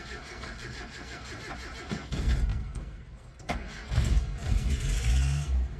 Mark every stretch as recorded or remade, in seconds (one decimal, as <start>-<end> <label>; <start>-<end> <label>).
0.0-1.3 remade; 1.3-1.8 recorded; 1.8-5.8 remade